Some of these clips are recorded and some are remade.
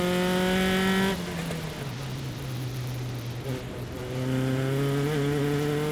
recorded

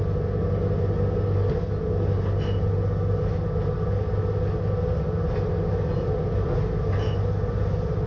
recorded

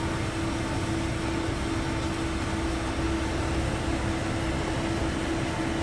recorded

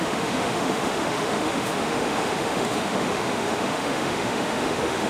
remade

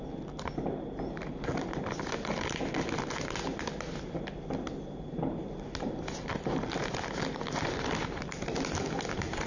recorded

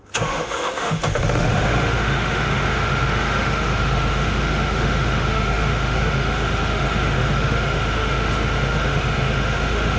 remade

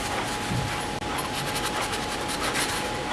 recorded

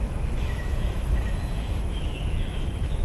remade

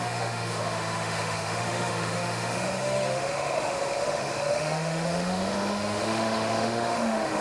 remade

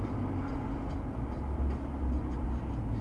recorded